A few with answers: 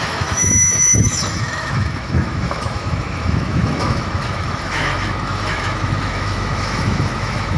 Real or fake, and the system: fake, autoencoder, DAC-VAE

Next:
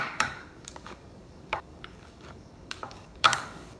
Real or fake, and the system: fake, codec, DAC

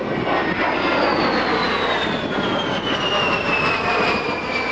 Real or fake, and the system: real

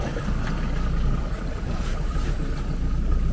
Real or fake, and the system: real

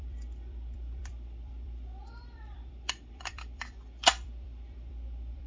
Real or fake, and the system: fake, vocoder, BigVGAN v2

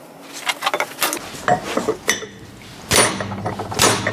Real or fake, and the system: real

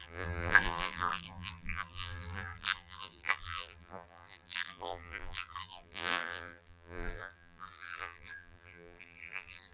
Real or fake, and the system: fake, vocoder, BigVGAN v2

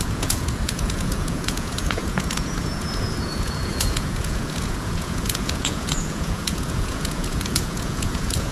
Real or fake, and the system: fake, vocoder, Vocos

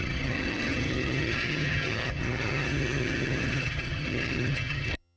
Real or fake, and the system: fake, vocoder, HiFi-GAN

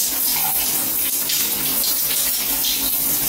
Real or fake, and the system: real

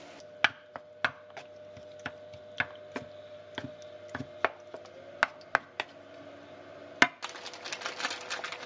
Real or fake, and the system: real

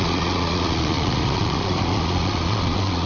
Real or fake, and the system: fake, vocoder, Vocos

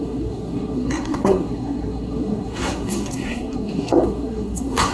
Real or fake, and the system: fake, codec, SNAC